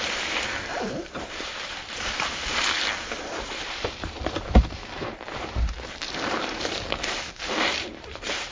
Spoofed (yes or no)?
yes